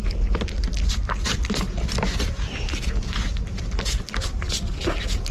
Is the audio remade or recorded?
recorded